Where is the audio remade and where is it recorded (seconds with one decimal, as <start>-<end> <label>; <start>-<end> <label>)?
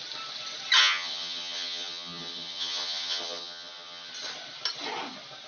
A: 0.0-0.8 recorded; 0.8-4.1 remade; 4.1-5.5 recorded